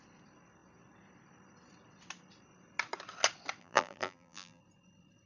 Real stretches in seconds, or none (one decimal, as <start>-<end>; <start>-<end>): 0.0-3.6; 4.6-5.3